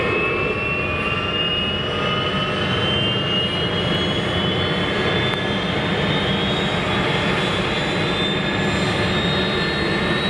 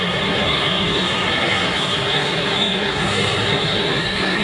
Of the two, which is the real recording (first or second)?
first